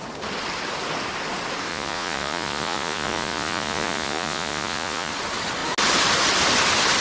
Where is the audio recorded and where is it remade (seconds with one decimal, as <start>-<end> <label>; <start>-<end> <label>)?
0.0-1.7 recorded; 1.7-5.1 remade; 5.1-7.0 recorded